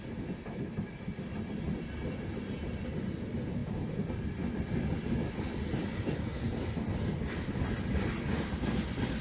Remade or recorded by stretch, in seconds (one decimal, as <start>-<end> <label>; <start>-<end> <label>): 0.0-9.2 recorded